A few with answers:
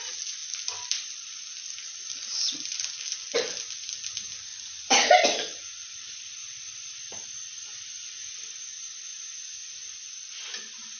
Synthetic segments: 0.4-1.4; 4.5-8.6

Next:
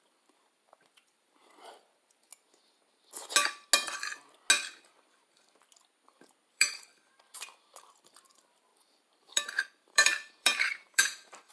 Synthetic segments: 0.0-2.3; 6.5-6.9; 8.0-11.5

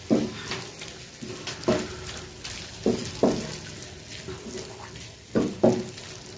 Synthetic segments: none

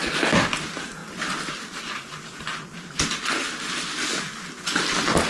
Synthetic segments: none

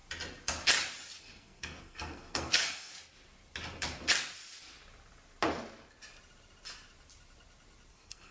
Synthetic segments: 1.2-2.9; 7.9-8.3

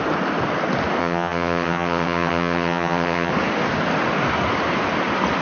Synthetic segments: 1.0-3.3